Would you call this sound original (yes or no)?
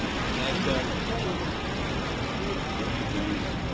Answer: yes